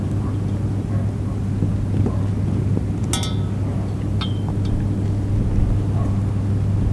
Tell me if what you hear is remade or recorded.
recorded